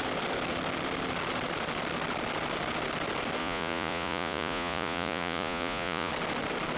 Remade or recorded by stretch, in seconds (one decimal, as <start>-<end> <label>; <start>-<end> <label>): 0.0-3.4 recorded; 3.4-6.1 remade; 6.1-6.8 recorded